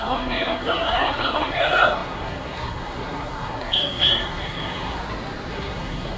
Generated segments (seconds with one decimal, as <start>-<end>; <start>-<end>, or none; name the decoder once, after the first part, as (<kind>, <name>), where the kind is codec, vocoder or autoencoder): 0.0-5.0 (codec, SNAC); 5.5-6.2